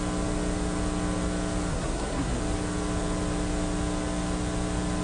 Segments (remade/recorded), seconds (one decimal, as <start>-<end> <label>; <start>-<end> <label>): 0.0-1.7 recorded; 1.7-2.4 remade; 2.4-5.0 recorded